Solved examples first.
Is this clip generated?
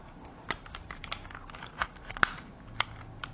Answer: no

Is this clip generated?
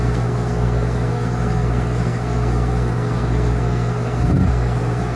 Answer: yes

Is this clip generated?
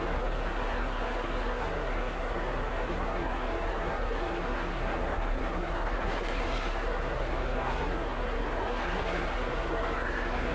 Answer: yes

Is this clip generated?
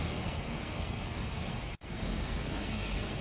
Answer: yes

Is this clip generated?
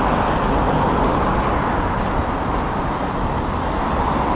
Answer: no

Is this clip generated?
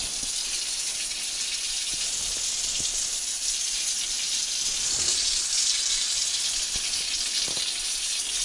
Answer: no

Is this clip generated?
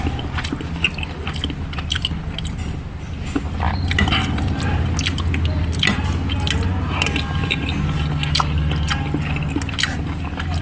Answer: no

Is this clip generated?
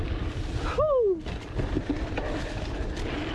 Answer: no